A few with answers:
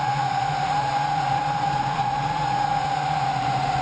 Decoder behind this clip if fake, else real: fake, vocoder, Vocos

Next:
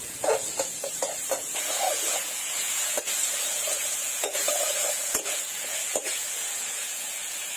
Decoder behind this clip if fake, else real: fake, vocoder, Vocos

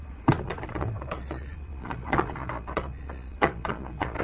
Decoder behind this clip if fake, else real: fake, vocoder, Vocos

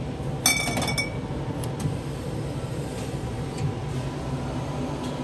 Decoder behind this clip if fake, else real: real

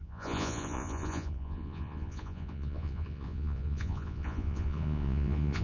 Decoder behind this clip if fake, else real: fake, vocoder, Vocos